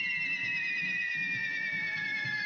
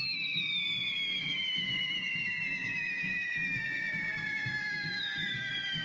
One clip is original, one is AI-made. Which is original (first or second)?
first